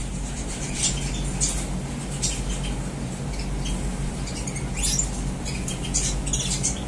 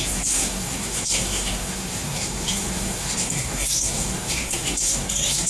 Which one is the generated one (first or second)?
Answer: second